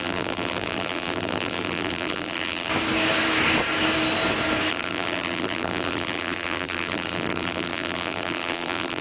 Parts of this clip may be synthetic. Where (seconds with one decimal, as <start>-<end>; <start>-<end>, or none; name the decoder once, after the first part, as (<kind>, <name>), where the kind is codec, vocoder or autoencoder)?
0.0-2.7 (vocoder, BigVGAN v2); 4.7-9.0